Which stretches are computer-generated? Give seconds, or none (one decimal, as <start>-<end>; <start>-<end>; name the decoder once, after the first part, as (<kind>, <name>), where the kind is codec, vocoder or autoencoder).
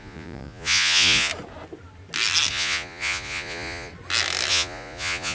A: 0.0-1.3 (vocoder, Vocos); 2.5-3.9; 4.5-5.3